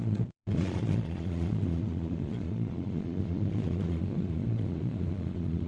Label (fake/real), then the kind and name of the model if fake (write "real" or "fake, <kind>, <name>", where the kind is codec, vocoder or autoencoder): fake, vocoder, Vocos